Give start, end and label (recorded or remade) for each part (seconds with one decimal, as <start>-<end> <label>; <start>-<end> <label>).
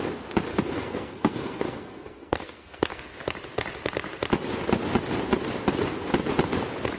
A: 0.0-0.5 recorded; 0.5-3.0 remade; 3.0-7.0 recorded